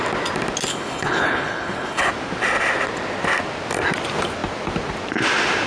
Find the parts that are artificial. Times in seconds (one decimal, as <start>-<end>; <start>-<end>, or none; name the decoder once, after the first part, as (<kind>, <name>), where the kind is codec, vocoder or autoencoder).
0.7-2.1 (codec, HILCodec)